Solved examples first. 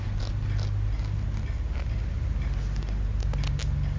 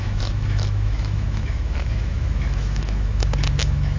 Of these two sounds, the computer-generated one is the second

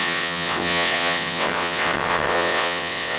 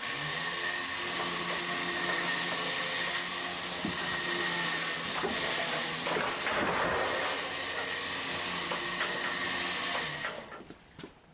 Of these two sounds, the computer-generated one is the first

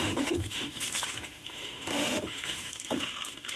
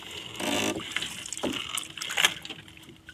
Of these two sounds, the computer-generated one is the first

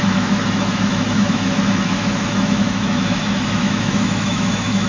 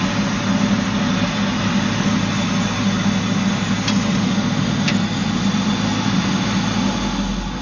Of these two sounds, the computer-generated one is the first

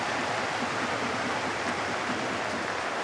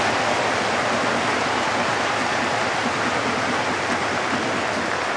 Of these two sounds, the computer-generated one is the first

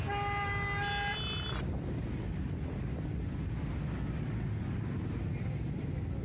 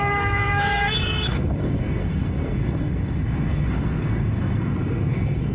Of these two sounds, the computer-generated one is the second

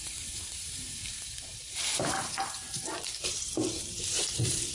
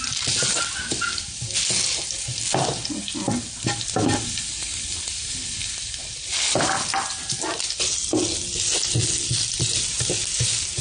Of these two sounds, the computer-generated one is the first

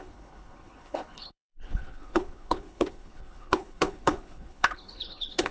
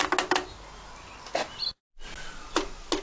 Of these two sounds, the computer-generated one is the first